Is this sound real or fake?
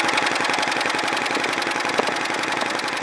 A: real